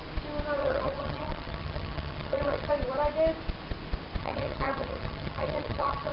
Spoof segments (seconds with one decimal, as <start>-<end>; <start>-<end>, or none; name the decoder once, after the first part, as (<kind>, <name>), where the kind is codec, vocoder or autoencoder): 0.6-2.7 (vocoder, HiFi-GAN); 4.2-6.1